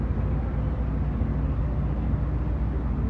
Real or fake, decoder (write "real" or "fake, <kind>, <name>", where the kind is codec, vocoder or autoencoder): real